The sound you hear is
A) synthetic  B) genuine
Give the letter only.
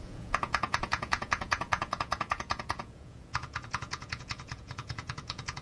A